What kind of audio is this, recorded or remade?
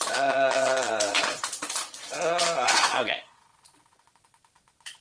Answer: remade